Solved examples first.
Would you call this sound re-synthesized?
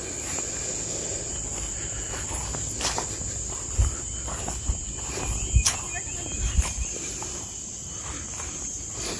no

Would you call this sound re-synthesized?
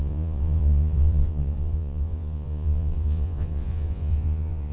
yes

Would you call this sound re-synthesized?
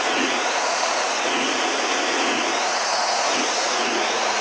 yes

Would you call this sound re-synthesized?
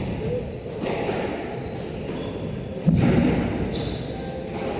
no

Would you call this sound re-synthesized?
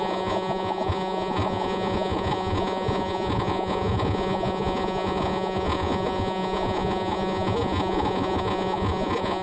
yes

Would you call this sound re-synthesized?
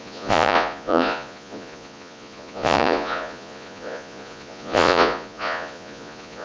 yes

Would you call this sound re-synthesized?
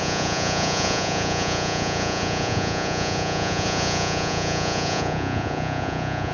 yes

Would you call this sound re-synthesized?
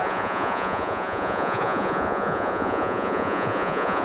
yes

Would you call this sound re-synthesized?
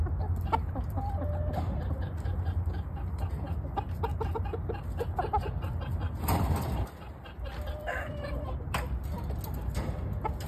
no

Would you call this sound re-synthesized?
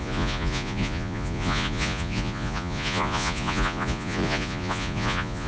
yes